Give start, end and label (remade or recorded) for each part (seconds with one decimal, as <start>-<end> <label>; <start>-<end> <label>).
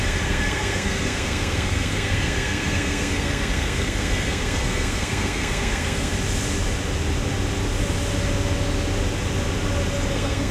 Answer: 0.0-6.1 remade; 6.1-10.1 recorded; 10.1-10.5 remade